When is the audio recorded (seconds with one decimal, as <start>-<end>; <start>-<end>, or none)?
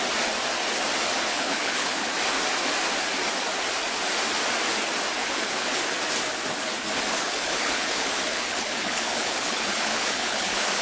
0.0-1.3; 2.1-5.2; 5.8-7.1